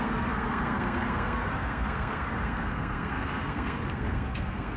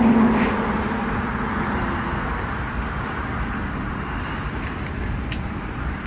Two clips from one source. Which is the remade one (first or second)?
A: first